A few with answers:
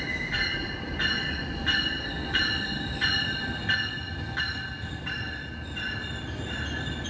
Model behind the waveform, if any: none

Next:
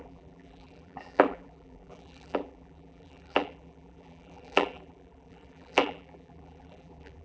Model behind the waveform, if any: vocoder, BigVGAN v2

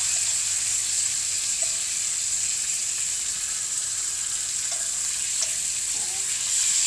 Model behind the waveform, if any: none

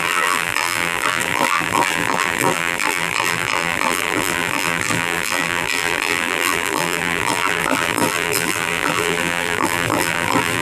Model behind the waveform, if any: vocoder, BigVGAN v2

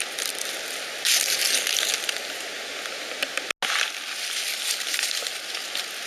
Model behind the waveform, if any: none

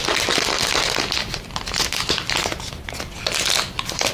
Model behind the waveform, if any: none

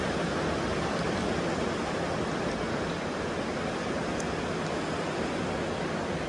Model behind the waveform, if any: none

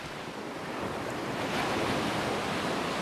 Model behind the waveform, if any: vocoder, BigVGAN v2